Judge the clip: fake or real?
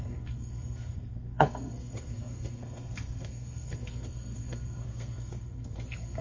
fake